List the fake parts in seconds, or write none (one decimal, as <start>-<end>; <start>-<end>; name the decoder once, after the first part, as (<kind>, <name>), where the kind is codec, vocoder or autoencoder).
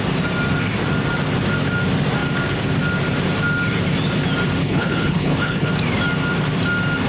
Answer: 4.6-5.7 (codec, HILCodec)